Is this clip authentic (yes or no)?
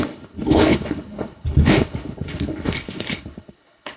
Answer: no